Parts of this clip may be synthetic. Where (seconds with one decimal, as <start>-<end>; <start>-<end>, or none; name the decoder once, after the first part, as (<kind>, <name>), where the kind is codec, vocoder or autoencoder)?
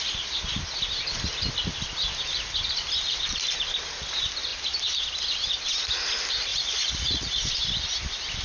6.5-7.5 (vocoder, Vocos)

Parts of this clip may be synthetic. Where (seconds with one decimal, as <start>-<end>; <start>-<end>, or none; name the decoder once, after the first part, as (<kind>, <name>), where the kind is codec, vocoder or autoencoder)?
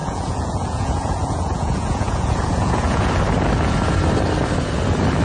0.0-3.1 (vocoder, Vocos)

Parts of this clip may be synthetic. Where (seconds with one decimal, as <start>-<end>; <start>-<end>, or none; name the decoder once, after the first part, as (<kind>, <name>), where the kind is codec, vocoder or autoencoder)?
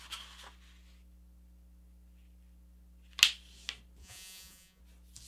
4.0-4.8 (vocoder, Vocos)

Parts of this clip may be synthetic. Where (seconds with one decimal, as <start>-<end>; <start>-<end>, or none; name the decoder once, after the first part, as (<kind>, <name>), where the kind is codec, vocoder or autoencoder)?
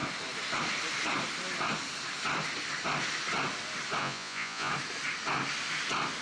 4.0-4.7 (vocoder, Vocos)